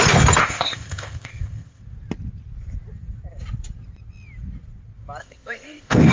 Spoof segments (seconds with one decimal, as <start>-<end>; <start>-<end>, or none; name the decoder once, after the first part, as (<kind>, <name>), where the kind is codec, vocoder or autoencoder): 0.4-1.8 (codec, ZipCodec); 5.2-6.1